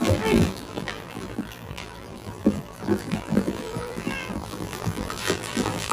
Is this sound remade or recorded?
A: remade